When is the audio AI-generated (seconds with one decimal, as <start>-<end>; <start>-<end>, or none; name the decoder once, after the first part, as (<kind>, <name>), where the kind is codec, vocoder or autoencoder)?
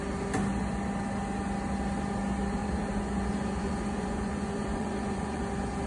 2.6-5.4 (vocoder, Vocos)